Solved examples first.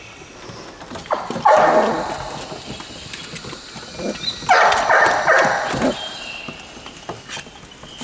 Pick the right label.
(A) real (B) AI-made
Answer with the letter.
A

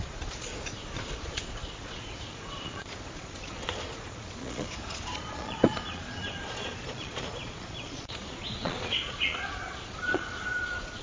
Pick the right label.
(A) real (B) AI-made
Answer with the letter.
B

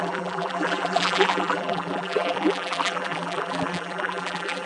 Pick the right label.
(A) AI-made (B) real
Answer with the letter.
A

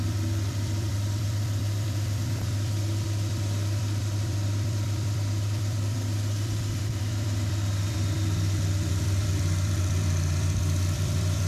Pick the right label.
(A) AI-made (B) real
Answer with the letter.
A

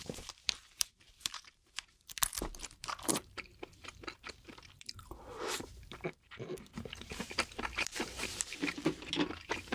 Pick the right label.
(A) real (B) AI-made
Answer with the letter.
B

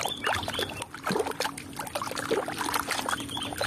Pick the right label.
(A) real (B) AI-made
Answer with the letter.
A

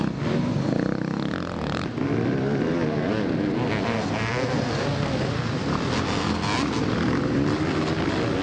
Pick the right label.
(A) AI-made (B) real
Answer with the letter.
B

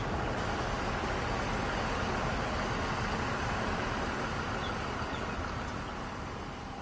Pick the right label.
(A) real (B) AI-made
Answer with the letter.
A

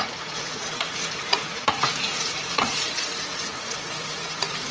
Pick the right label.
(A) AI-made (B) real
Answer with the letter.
A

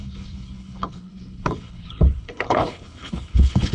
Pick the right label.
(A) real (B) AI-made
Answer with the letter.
B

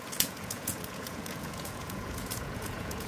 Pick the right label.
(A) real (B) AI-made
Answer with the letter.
B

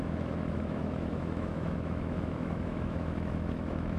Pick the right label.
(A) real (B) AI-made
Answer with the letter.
B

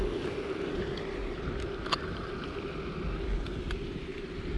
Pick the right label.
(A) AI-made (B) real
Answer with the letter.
B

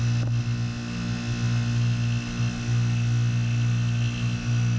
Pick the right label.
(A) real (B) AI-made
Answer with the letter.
A